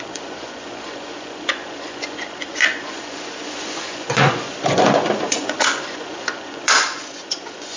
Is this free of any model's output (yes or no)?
no